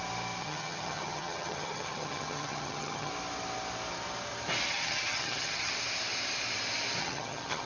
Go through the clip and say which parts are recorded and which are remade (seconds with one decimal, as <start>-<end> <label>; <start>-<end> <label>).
0.0-0.4 recorded; 0.4-3.1 remade; 3.1-4.7 recorded; 4.7-5.7 remade; 5.7-7.0 recorded; 7.0-7.7 remade